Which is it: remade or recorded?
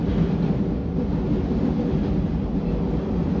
recorded